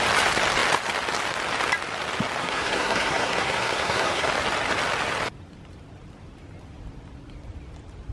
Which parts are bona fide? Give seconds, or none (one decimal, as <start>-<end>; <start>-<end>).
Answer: 0.0-2.4; 4.3-8.1

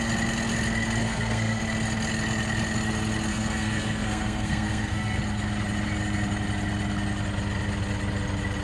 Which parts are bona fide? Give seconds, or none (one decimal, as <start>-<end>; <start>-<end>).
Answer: 0.0-1.0; 1.6-3.3; 5.2-8.6